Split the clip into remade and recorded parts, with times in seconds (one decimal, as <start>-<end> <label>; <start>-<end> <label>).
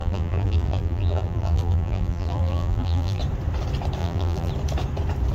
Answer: 0.0-3.2 remade; 3.2-4.0 recorded; 4.0-4.5 remade; 4.5-5.3 recorded